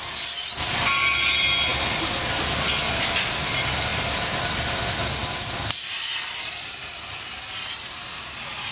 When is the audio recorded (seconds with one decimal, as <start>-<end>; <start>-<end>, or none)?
0.0-1.7; 2.3-3.9; 4.8-5.2; 7.3-8.7